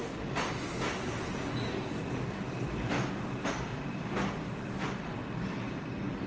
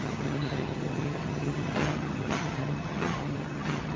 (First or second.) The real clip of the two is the first